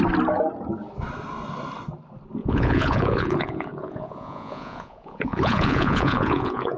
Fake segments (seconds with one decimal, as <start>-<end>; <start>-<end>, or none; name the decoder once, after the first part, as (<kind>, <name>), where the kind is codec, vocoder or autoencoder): 2.4-6.8 (vocoder, Vocos)